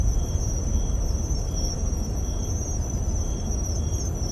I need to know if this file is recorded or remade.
recorded